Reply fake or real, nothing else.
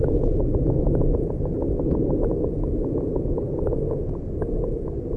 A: real